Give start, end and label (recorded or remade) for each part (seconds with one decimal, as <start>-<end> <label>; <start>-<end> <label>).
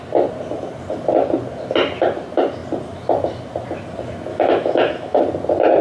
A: 0.0-4.3 recorded; 4.3-5.2 remade; 5.2-5.8 recorded